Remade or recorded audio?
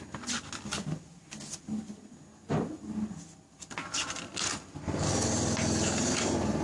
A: recorded